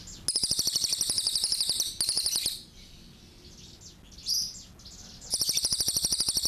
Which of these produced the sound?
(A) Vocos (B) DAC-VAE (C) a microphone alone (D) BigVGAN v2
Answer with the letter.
C